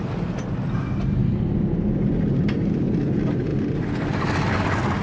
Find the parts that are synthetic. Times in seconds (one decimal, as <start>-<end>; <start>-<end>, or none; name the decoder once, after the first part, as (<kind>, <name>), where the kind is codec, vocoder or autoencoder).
none